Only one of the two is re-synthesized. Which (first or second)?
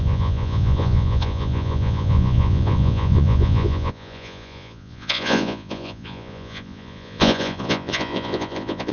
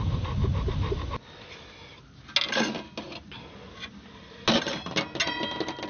first